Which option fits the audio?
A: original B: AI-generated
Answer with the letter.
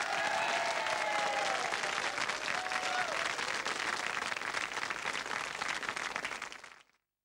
A